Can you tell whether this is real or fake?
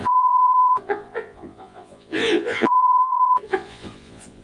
fake